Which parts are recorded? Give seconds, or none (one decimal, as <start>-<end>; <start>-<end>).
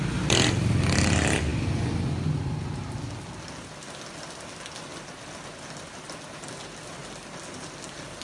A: 0.0-8.2